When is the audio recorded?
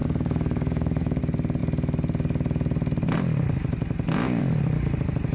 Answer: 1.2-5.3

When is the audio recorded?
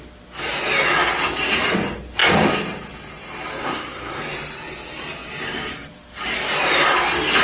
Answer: 0.0-3.6; 4.2-7.4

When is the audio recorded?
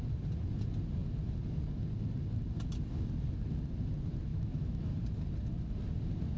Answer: 0.0-4.3; 4.9-6.4